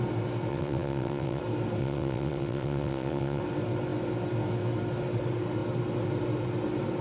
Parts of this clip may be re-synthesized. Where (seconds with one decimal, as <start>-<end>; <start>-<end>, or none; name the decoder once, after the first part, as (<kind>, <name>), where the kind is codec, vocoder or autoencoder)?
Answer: 0.5-1.4 (vocoder, WaveNeXt); 1.8-3.4